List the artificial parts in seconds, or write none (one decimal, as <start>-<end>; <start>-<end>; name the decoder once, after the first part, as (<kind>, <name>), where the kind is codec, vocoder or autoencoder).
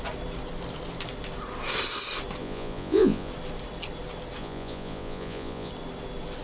2.4-3.3 (vocoder, Vocos); 4.4-5.7